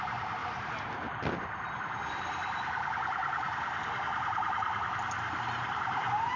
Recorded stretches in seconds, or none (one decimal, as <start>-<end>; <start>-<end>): 0.0-0.4; 1.2-6.4